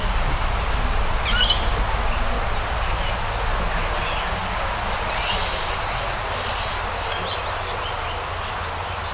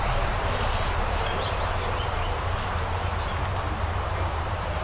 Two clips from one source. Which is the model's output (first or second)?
second